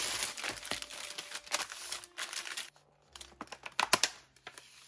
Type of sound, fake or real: real